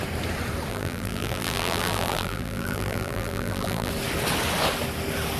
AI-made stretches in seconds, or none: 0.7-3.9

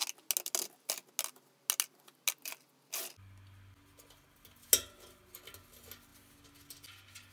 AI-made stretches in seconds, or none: none

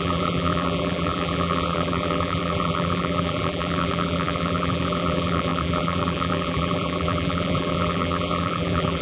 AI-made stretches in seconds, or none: 0.0-9.0

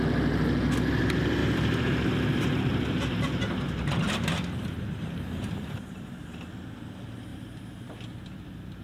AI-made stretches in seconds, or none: 1.4-6.5; 7.3-7.9

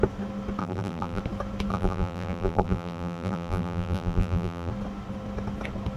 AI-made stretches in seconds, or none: 0.6-1.2; 1.7-4.7

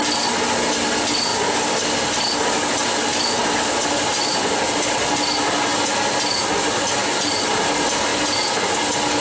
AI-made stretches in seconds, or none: none

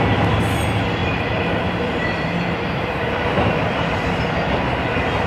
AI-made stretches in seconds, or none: 1.0-4.2